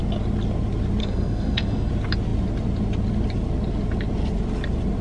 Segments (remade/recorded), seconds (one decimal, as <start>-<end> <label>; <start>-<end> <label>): 0.0-1.0 recorded; 1.0-1.9 remade; 1.9-5.0 recorded